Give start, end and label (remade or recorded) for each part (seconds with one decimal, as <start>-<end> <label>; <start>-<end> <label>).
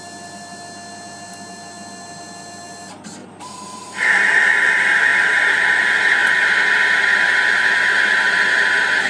0.0-3.2 recorded; 3.2-4.4 remade; 4.4-9.1 recorded